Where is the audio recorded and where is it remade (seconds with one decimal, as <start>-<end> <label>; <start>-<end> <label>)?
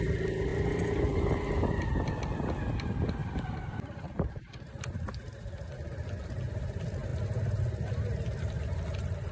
0.0-3.2 recorded; 3.2-4.5 remade; 4.5-9.3 recorded